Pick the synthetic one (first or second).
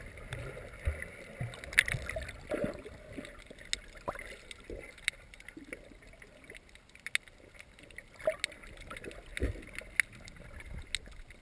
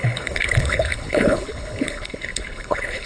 second